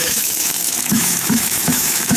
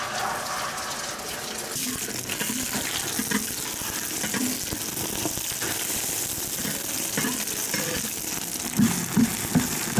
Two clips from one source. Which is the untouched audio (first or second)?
second